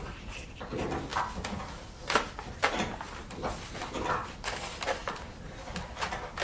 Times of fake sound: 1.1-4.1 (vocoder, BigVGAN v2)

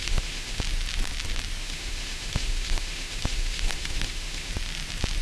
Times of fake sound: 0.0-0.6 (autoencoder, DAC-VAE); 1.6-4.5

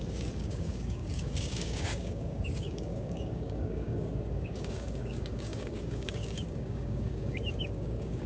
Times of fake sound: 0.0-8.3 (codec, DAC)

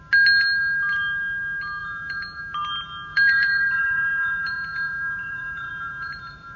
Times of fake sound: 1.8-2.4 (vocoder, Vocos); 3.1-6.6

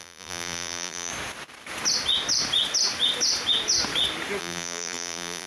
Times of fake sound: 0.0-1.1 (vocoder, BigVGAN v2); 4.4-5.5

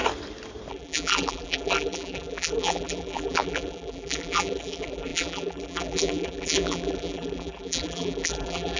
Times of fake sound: 0.7-8.8 (vocoder, BigVGAN v2)

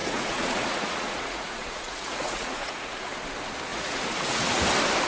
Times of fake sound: 0.0-3.1 (vocoder, Vocos); 3.7-4.6